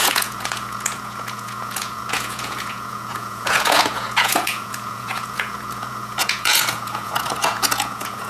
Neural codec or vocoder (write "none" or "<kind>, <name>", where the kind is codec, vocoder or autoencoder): vocoder, Vocos